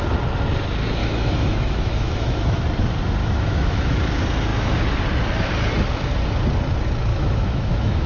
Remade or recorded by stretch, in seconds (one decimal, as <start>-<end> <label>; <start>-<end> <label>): 0.0-1.0 recorded; 1.0-2.6 remade; 2.6-3.2 recorded; 3.2-4.0 remade; 4.0-7.1 recorded; 7.1-8.1 remade